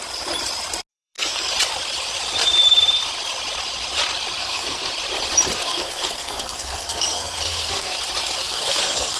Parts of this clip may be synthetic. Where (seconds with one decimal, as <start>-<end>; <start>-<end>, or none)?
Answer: 0.9-1.5; 4.4-4.9; 5.6-8.0; 8.4-9.2